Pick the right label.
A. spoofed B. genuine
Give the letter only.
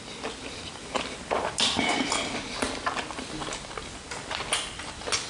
B